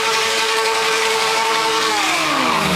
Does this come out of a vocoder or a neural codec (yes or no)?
yes